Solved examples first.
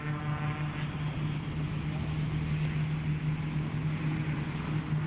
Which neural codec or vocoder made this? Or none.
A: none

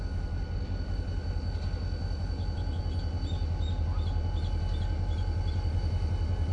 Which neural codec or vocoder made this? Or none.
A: none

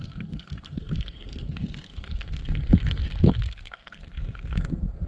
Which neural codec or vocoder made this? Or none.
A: codec, SNAC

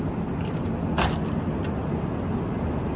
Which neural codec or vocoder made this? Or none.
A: none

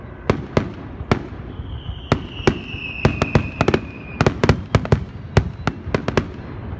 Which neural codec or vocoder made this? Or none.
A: none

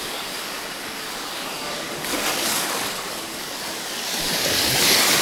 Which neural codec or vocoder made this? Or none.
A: codec, DAC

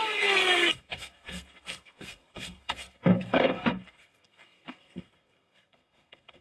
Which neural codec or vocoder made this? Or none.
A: codec, SNAC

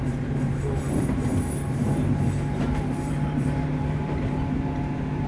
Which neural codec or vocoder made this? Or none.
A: vocoder, BigVGAN v2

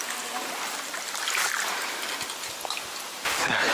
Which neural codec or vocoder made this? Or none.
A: none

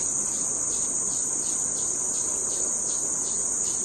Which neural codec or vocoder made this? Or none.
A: none